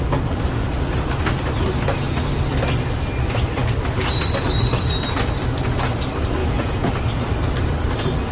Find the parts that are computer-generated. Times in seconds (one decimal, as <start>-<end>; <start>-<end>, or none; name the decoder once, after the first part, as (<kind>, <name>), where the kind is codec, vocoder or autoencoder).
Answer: 6.4-6.9 (vocoder, Vocos)